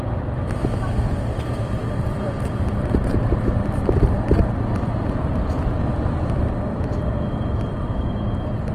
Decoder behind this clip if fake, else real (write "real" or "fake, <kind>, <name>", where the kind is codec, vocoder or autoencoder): fake, vocoder, BigVGAN v2